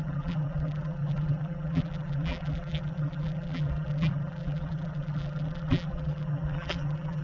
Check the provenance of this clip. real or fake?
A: fake